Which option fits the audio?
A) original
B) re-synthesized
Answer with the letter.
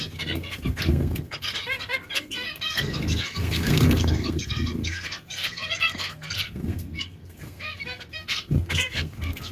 B